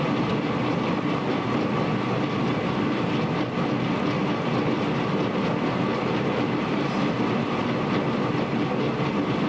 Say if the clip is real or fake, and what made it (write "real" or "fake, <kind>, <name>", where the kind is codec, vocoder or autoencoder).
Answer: real